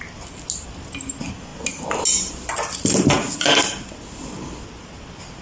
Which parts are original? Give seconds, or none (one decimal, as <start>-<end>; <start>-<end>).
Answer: 0.0-5.4

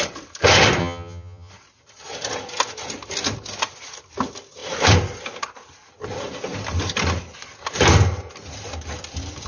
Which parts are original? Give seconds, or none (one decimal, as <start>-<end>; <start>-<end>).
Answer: 0.0-0.8; 1.5-9.5

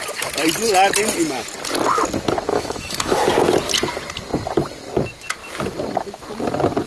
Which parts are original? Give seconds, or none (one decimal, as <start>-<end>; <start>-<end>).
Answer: 0.0-2.5; 3.2-6.9

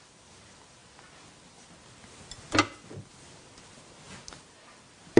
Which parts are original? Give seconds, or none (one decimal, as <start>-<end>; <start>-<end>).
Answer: 0.0-5.2